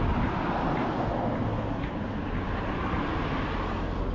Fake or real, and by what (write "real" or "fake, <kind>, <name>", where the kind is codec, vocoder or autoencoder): real